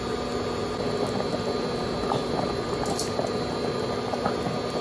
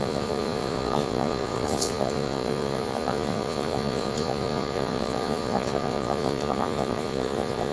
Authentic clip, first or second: first